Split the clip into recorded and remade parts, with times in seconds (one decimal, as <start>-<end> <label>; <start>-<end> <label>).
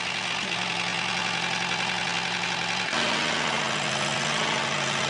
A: 0.0-5.1 recorded